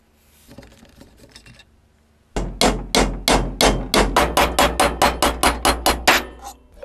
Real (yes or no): yes